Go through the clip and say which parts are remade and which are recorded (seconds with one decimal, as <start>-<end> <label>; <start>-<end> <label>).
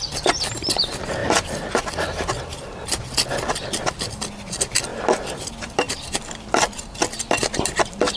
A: 0.0-8.2 recorded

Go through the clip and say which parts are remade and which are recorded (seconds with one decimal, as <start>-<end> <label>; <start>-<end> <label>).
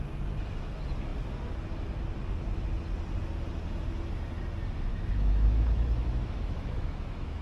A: 0.0-4.9 recorded; 4.9-7.4 remade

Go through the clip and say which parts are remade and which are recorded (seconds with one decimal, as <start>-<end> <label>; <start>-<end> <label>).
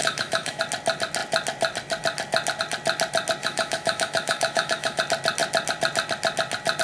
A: 0.0-0.6 remade; 0.6-3.4 recorded; 3.4-5.0 remade; 5.0-6.8 recorded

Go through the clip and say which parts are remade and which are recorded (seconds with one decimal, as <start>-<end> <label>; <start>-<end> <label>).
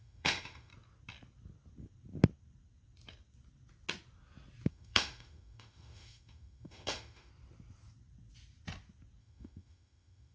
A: 0.0-0.7 remade; 0.7-4.7 recorded; 4.7-7.3 remade; 7.3-9.2 recorded; 9.2-10.3 remade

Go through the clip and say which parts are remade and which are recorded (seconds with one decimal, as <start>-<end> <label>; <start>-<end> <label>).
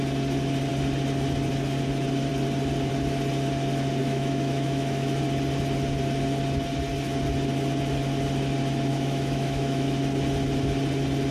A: 0.0-4.0 recorded; 4.0-5.2 remade; 5.2-8.9 recorded; 8.9-10.0 remade; 10.0-11.3 recorded